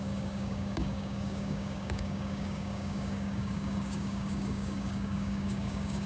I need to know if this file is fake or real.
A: fake